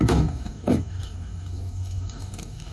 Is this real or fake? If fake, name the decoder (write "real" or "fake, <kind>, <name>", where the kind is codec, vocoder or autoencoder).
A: fake, codec, DAC